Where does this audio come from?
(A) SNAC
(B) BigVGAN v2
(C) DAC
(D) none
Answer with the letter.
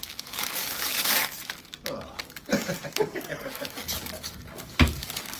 C